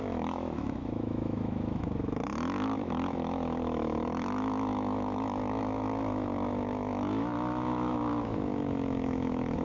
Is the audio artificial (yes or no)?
yes